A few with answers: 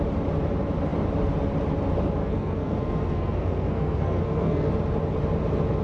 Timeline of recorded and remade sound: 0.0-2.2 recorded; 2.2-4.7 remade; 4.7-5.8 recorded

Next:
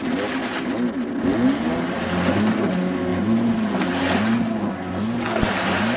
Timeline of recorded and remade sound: 0.0-6.0 recorded